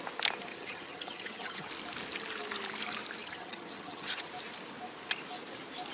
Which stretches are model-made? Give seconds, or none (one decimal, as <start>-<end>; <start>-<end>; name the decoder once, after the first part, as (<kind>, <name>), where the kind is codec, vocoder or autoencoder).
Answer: 0.5-1.7 (vocoder, HiFi-GAN); 3.2-4.3